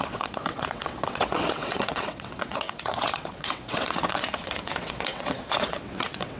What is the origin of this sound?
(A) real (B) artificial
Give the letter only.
B